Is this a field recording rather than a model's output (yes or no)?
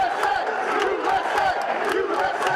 yes